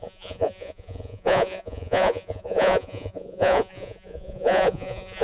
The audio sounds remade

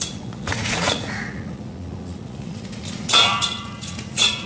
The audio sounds remade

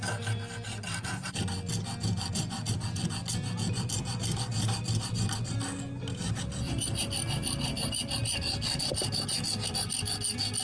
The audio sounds recorded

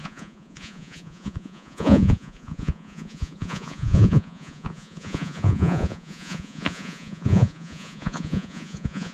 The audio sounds remade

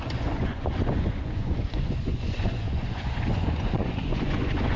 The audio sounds remade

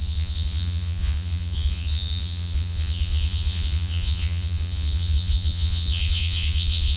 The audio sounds remade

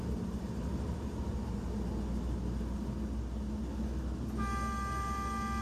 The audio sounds recorded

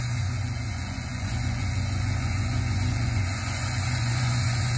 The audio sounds remade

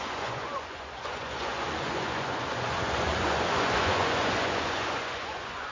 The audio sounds remade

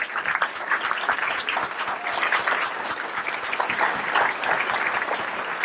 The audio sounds recorded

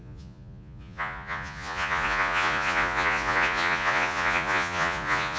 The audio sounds remade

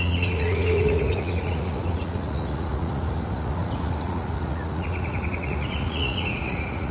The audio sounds remade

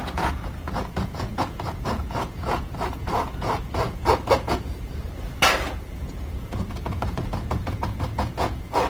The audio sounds remade